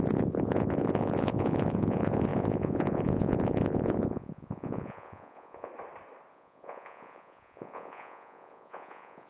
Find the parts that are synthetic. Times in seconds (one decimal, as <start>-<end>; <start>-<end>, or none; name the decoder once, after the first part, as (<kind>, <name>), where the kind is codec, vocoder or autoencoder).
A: 0.0-5.7 (vocoder, Vocos); 6.3-9.3